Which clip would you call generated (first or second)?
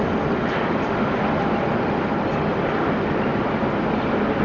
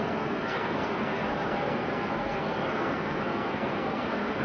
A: second